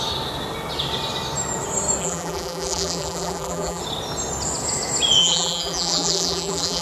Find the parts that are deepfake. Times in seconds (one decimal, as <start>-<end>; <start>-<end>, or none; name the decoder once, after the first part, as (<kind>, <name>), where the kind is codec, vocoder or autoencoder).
2.0-3.8 (vocoder, BigVGAN v2); 5.2-6.8